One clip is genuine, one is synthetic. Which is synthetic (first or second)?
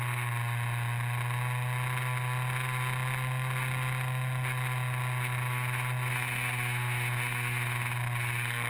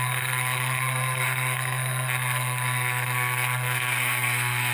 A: second